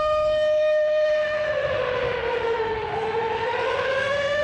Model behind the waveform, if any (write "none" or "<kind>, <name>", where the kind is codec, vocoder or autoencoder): autoencoder, DAC-VAE